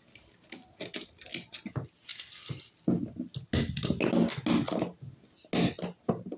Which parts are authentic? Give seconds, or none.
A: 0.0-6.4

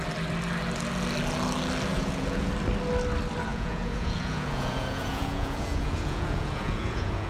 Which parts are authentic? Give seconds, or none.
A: 0.0-1.9; 2.5-3.5

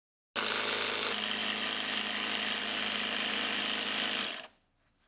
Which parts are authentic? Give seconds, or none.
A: 0.0-5.1

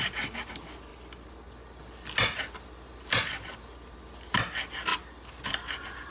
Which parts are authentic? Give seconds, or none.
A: 0.0-6.1

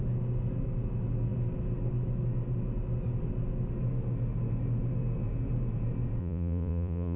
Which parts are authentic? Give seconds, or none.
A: 0.0-6.2

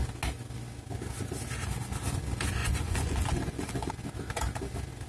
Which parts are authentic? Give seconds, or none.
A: 0.0-2.6; 3.9-5.1

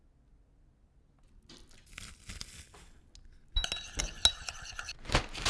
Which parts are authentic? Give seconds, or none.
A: 0.0-5.5